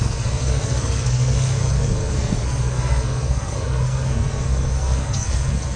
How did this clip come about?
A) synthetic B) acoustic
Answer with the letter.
A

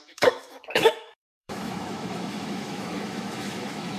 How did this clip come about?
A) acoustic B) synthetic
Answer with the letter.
B